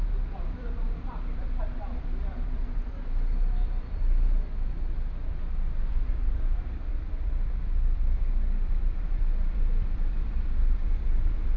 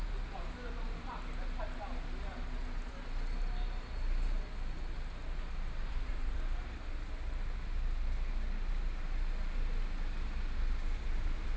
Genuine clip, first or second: second